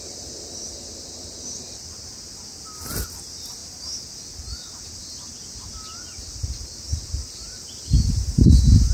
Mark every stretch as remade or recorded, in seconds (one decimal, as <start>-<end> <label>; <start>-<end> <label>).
0.0-8.9 recorded